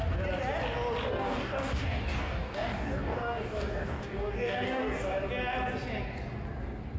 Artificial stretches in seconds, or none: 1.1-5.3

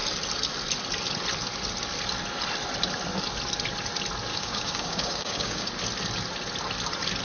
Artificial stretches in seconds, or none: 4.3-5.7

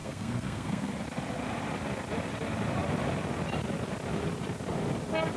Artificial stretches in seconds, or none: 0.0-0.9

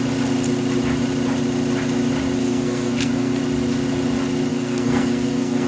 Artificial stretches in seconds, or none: 2.4-3.4; 4.5-5.7